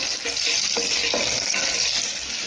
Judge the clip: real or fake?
real